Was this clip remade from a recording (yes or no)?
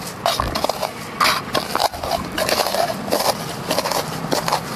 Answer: no